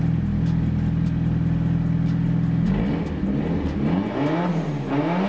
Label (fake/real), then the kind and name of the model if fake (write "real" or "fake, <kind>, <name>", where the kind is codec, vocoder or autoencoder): real